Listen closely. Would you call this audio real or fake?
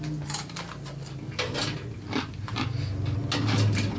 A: real